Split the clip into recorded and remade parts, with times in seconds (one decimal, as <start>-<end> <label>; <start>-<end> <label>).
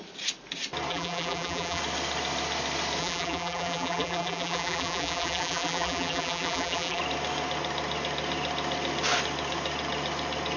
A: 0.0-0.9 recorded; 0.9-1.8 remade; 1.8-3.0 recorded; 3.0-7.0 remade; 7.0-10.6 recorded